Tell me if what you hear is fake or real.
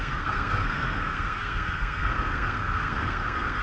fake